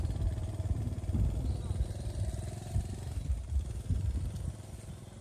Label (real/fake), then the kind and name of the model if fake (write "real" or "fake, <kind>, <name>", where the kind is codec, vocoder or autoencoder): real